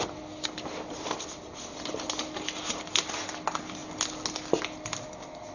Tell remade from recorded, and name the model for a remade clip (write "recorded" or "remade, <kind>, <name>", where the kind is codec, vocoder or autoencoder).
recorded